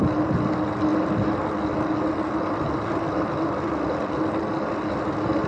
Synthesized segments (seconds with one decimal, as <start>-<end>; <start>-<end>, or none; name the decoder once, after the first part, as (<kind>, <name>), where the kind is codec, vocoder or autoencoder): none